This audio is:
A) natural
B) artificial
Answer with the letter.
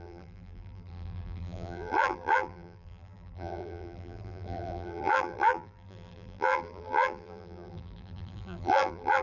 B